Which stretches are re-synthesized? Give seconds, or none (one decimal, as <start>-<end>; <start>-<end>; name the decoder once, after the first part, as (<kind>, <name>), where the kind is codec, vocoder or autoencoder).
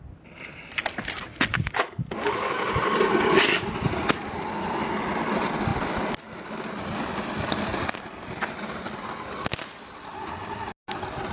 1.5-2.7 (codec, DAC)